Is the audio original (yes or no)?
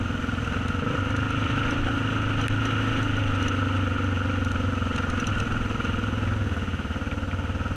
yes